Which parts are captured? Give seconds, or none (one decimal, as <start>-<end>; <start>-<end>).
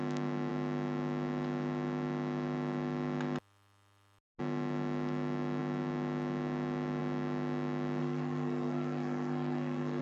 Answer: 0.0-8.0